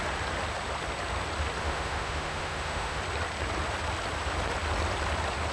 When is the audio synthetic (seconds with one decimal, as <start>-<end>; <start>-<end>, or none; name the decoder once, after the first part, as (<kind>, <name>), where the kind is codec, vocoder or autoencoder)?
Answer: 1.6-3.0 (autoencoder, DAC-VAE)

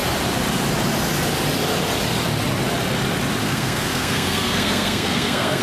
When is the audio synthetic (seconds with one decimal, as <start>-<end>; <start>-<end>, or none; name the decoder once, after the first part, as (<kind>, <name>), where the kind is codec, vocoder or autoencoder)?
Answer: 3.4-5.6 (codec, SNAC)